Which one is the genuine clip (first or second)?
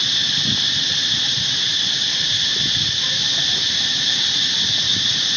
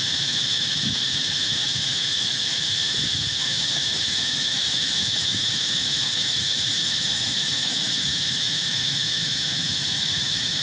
first